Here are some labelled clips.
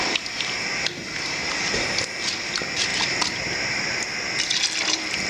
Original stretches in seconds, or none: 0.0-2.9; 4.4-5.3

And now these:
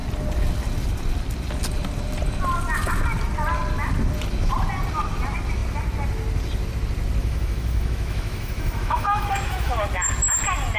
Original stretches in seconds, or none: 0.0-7.2; 9.7-10.8

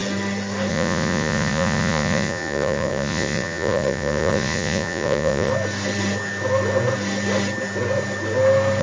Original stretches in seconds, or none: 0.0-0.7; 5.5-8.8

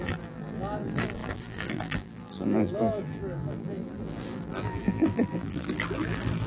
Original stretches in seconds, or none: none

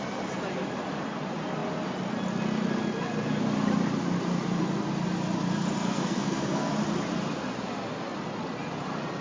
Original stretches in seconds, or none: 0.0-5.8; 6.7-9.2

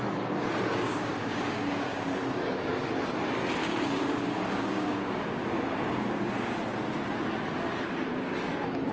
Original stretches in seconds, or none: 0.0-0.7; 2.9-3.6; 6.5-8.9